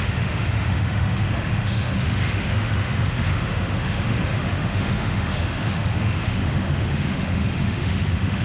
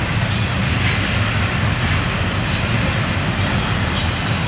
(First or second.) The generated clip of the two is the first